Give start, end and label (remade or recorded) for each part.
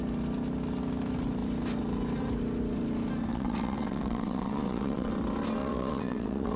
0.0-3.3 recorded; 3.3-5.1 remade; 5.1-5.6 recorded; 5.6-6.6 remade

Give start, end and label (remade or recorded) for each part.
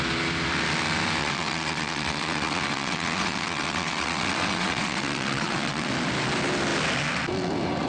0.0-1.2 recorded; 1.2-5.9 remade; 5.9-7.9 recorded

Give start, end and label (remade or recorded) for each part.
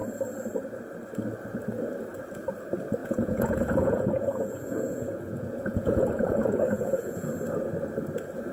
0.0-3.0 recorded; 3.0-7.3 remade; 7.3-8.5 recorded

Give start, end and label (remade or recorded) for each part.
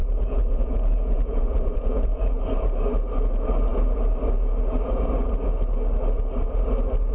0.0-2.4 remade; 2.4-7.1 recorded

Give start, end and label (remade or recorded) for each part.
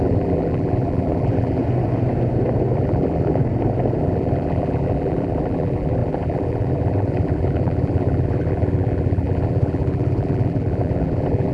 0.0-1.6 remade; 1.6-2.8 recorded; 2.8-3.4 remade; 3.4-4.0 recorded; 4.0-11.5 remade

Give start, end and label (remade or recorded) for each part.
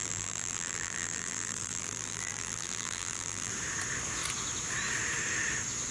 0.0-3.5 remade; 3.5-5.9 recorded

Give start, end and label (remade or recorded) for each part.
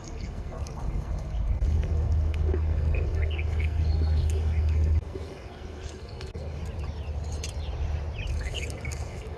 0.0-6.6 remade; 6.6-8.3 recorded; 8.3-9.4 remade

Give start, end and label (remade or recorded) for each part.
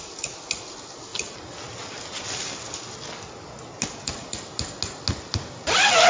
0.0-6.1 recorded